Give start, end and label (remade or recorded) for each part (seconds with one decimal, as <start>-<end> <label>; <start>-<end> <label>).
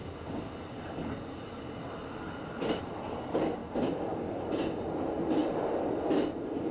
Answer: 0.0-6.7 recorded